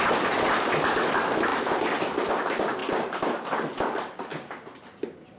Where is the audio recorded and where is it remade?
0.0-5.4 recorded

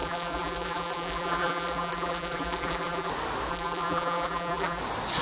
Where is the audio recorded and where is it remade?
0.0-3.1 remade; 3.1-3.5 recorded; 3.5-4.8 remade; 4.8-5.2 recorded

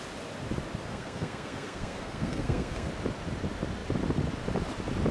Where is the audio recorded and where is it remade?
0.0-0.9 recorded; 0.9-2.9 remade; 2.9-5.1 recorded

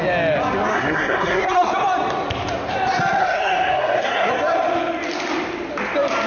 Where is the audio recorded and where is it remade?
0.0-0.7 recorded; 0.7-1.7 remade; 1.7-3.2 recorded; 3.2-4.3 remade; 4.3-6.3 recorded